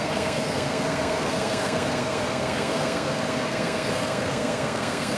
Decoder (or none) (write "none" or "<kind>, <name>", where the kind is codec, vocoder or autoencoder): codec, SNAC